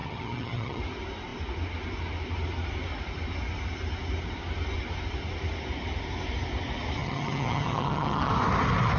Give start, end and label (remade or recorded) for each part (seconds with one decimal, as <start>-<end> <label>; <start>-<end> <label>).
0.0-0.8 remade; 0.8-7.0 recorded; 7.0-8.3 remade; 8.3-9.0 recorded